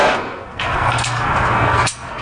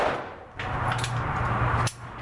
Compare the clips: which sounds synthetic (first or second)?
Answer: first